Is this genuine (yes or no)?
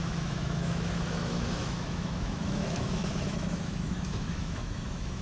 no